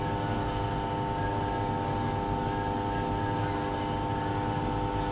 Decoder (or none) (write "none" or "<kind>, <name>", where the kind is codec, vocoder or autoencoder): none